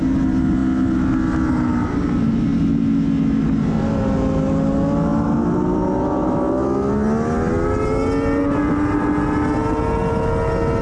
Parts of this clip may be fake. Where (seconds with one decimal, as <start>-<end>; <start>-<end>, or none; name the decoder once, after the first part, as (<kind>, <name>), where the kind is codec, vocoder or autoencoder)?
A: none